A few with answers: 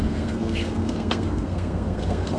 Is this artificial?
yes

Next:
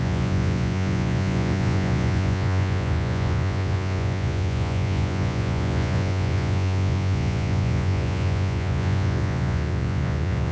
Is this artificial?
yes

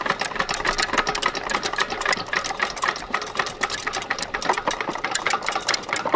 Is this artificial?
yes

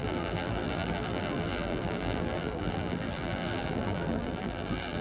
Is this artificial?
yes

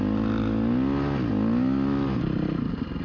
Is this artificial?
no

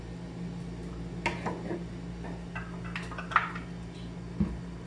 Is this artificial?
no